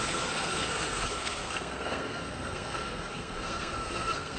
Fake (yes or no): yes